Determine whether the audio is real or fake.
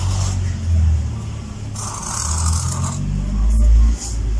real